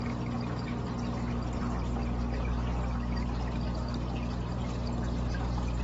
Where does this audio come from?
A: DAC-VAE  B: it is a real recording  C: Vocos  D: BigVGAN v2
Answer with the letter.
B